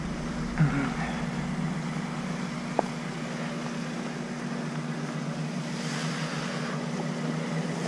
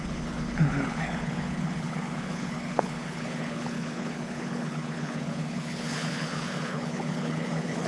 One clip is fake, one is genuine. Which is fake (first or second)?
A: second